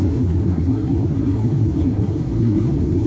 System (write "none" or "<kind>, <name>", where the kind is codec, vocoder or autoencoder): codec, SNAC